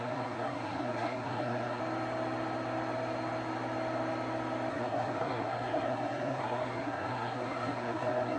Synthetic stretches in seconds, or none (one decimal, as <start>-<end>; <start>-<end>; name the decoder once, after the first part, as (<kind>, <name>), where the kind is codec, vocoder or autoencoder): 0.0-1.8 (codec, SNAC); 4.7-8.4